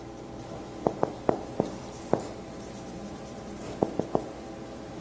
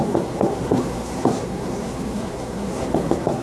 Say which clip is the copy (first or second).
second